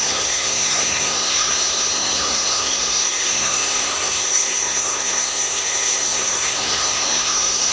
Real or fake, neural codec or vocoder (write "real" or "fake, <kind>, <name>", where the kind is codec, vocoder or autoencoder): fake, codec, SNAC